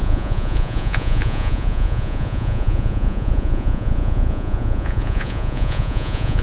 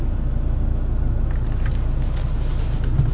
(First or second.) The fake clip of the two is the first